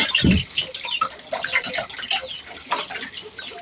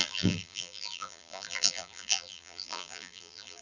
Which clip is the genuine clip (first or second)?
first